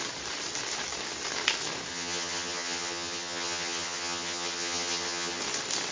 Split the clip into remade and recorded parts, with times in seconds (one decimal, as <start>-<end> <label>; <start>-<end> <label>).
0.0-1.9 recorded; 1.9-5.4 remade; 5.4-5.9 recorded